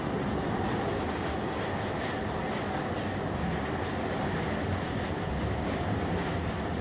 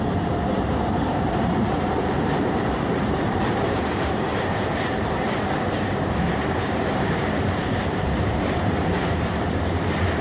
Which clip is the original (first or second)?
first